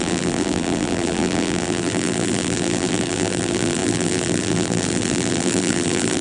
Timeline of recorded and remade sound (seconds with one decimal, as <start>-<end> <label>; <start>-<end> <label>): 0.0-6.2 remade